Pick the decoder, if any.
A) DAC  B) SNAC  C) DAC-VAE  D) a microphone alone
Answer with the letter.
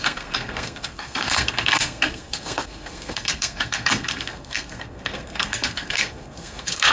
B